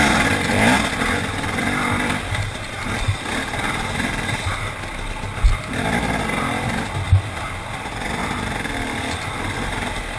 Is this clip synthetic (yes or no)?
no